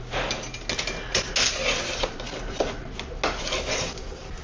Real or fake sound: real